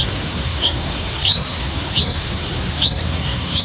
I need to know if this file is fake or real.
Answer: fake